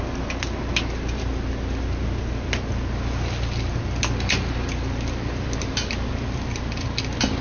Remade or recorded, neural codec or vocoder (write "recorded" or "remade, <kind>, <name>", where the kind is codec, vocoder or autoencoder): recorded